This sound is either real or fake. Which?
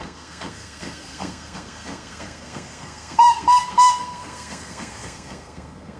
fake